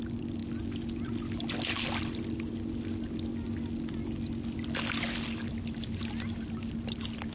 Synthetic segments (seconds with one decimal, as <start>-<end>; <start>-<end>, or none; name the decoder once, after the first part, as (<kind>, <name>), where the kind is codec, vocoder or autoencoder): none